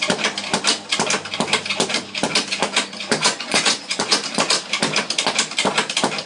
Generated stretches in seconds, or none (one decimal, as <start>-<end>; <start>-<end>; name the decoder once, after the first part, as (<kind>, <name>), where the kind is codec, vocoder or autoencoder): 3.1-4.3 (vocoder, Vocos)